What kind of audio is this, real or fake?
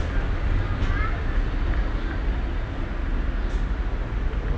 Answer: real